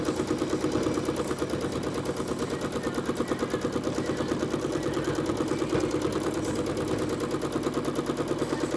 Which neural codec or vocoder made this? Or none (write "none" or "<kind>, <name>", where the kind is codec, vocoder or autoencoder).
none